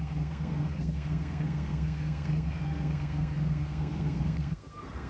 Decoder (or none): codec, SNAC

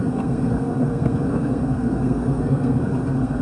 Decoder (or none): codec, SNAC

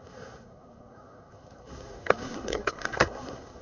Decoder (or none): codec, SNAC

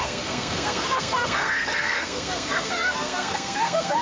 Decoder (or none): codec, SNAC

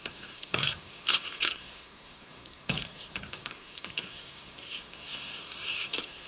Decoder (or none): codec, SNAC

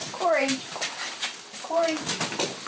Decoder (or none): none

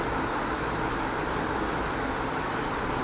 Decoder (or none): none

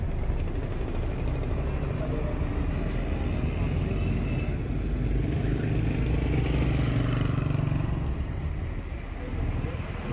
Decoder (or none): none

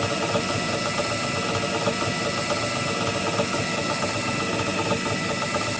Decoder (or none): none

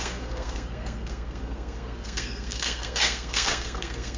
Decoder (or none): codec, SNAC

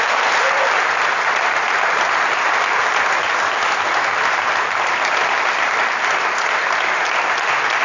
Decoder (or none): none